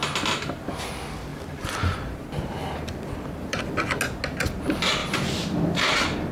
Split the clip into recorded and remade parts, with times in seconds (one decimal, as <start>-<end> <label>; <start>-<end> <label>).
0.0-1.3 recorded; 1.3-3.6 remade; 3.6-5.0 recorded; 5.0-6.3 remade